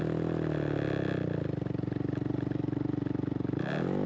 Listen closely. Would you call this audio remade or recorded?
recorded